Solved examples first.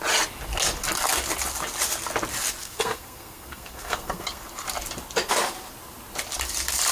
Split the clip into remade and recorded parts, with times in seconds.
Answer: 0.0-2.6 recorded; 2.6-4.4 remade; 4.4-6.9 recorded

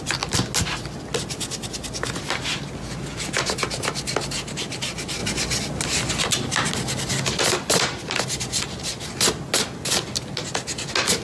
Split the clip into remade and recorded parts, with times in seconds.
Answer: 0.0-11.2 recorded